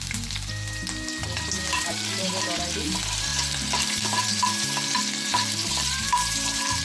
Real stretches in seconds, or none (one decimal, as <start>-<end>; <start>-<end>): 0.0-1.2; 2.8-3.3; 4.4-5.3